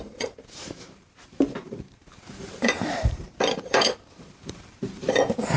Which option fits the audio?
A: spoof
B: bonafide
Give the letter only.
A